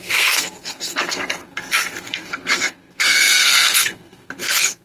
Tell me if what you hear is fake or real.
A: fake